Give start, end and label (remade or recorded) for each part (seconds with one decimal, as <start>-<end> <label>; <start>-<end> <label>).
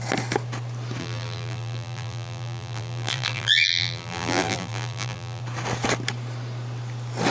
0.0-1.0 recorded; 1.0-5.4 remade; 5.4-7.3 recorded